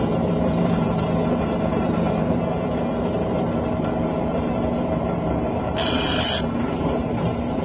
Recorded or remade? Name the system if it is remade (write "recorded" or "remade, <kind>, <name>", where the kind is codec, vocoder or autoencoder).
remade, vocoder, BigVGAN v2